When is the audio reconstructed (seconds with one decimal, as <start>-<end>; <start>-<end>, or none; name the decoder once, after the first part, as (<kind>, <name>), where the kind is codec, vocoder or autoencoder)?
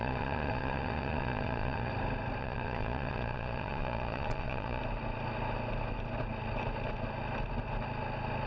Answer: 0.0-1.9 (vocoder, Vocos); 2.4-4.8